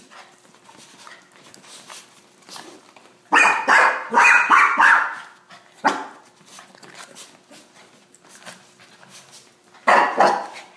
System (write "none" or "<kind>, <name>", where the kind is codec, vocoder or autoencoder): none